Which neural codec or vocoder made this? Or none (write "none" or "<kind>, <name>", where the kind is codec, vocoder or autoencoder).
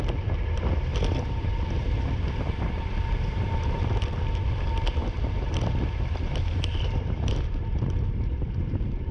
vocoder, BigVGAN v2